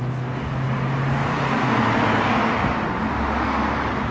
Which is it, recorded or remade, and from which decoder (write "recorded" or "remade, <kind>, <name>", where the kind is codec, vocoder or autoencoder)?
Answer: recorded